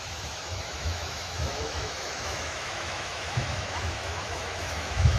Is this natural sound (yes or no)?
no